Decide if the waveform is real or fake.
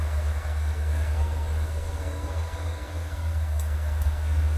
fake